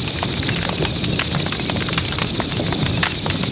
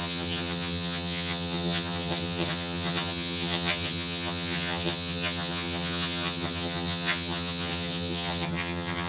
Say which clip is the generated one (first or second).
second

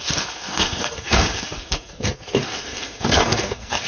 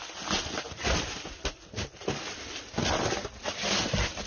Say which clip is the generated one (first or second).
first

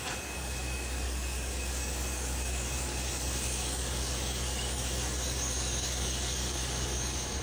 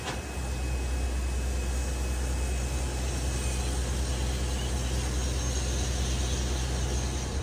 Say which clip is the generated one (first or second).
first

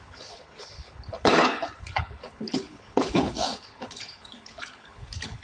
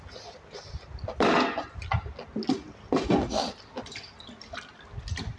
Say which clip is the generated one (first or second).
first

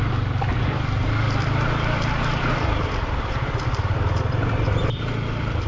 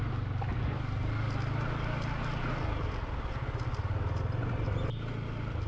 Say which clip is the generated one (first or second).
first